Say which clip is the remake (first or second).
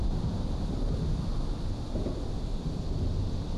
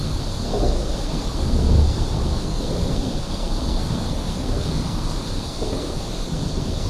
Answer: second